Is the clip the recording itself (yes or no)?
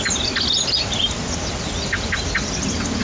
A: yes